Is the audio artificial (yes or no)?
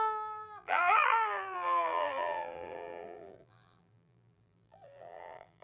yes